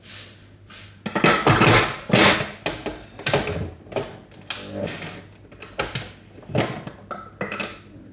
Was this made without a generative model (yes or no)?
yes